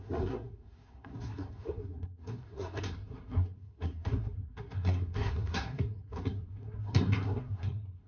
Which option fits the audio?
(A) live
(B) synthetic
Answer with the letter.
B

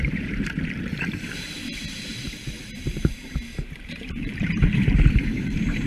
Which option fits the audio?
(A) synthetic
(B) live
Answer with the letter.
A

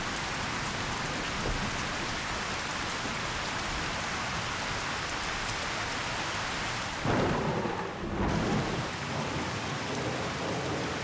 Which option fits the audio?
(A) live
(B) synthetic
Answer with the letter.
A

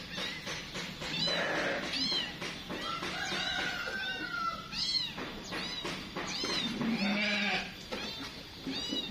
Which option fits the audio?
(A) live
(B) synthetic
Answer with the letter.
A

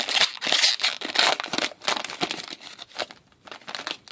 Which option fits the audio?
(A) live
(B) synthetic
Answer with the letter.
A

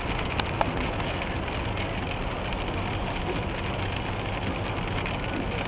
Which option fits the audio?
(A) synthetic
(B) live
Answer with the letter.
B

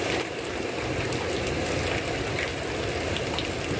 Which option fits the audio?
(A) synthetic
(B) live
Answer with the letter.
B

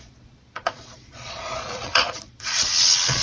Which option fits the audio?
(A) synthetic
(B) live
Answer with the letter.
A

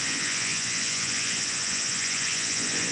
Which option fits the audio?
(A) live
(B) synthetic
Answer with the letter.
B